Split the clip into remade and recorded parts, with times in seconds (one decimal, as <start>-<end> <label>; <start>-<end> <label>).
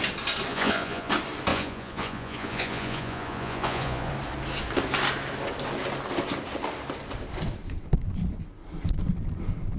0.0-0.5 recorded; 0.5-1.1 remade; 1.1-1.5 recorded; 1.5-4.1 remade; 4.1-9.8 recorded